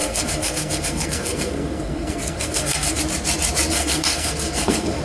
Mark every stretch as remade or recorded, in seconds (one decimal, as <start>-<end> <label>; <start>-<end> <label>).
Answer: 0.0-3.0 remade; 3.0-3.7 recorded; 3.7-5.0 remade